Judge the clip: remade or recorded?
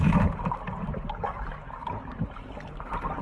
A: recorded